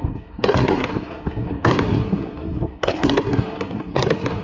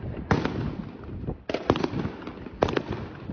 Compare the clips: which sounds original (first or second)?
second